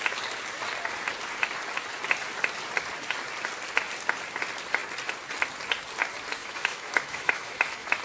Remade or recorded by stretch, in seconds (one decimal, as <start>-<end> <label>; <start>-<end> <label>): 0.0-6.4 recorded; 6.4-8.0 remade